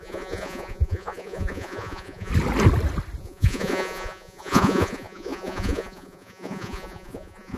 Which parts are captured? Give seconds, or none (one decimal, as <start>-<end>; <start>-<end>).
2.3-3.2